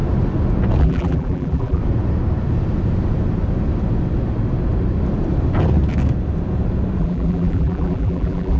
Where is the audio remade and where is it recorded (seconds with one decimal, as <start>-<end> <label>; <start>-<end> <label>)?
0.0-0.8 recorded; 0.8-1.8 remade; 1.8-7.0 recorded; 7.0-8.6 remade